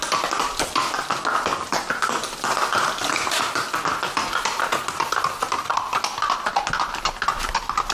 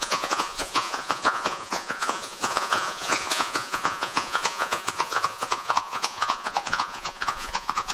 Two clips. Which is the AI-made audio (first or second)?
second